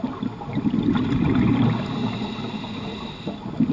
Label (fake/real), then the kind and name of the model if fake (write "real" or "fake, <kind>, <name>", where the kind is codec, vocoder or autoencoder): real